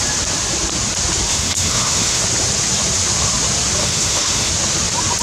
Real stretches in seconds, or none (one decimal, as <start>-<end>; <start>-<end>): 0.0-1.3; 2.2-3.8; 4.5-5.2

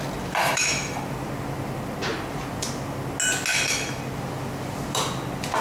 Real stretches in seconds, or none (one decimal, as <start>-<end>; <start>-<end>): 0.0-0.4; 1.0-3.5; 4.0-5.6

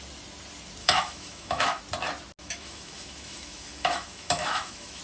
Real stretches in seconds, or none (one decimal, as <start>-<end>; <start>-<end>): 0.0-0.8; 1.8-2.4

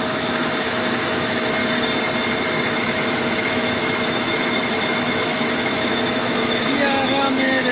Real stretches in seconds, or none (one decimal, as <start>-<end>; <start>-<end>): 1.6-2.8